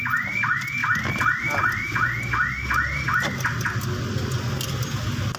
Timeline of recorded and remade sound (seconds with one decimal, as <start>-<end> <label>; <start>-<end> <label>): 0.0-5.4 recorded